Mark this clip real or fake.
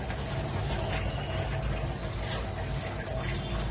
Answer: real